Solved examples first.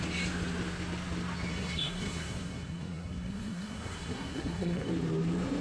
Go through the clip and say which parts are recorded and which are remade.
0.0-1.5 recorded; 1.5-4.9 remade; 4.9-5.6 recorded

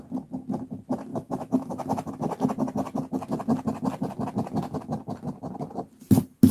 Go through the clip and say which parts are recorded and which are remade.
0.0-1.1 recorded; 1.1-2.1 remade; 2.1-6.5 recorded